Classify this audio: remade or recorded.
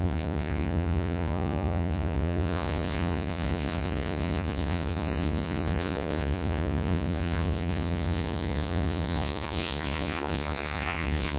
remade